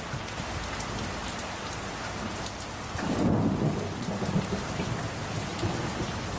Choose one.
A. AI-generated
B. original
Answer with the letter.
B